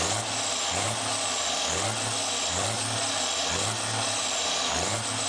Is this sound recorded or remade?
recorded